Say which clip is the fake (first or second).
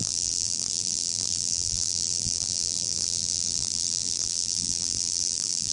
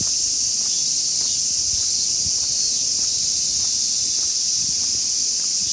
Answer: first